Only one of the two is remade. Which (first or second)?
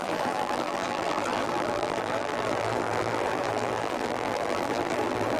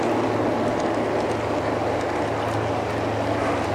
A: first